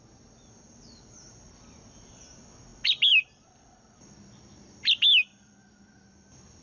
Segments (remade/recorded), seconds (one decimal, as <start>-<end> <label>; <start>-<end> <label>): 0.0-6.6 recorded